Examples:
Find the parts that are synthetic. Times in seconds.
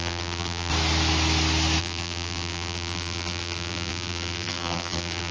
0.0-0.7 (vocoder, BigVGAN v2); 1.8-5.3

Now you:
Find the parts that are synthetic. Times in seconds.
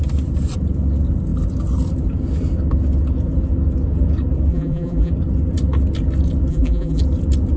4.5-5.1 (vocoder, BigVGAN v2); 6.5-7.0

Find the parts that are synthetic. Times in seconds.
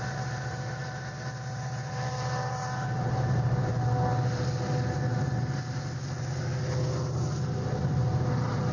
0.0-3.7 (vocoder, BigVGAN v2); 7.8-8.7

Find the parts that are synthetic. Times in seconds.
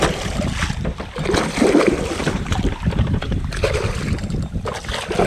2.2-3.5 (vocoder, BigVGAN v2)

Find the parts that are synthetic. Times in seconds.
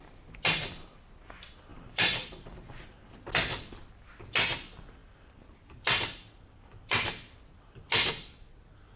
1.7-3.0 (vocoder, BigVGAN v2); 5.0-7.9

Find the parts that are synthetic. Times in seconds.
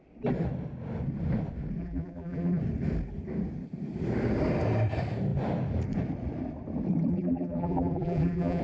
1.8-2.6 (vocoder, BigVGAN v2); 7.1-8.6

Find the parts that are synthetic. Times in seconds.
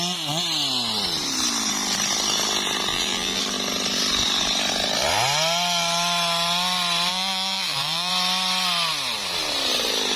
2.9-3.4 (vocoder, BigVGAN v2); 7.1-8.1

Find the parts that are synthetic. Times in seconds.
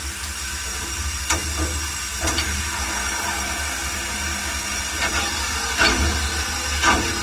0.7-1.3 (vocoder, BigVGAN v2)